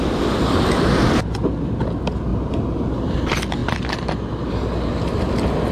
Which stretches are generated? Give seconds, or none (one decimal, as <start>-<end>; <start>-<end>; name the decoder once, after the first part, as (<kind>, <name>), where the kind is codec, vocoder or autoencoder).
2.3-3.1 (vocoder, BigVGAN v2)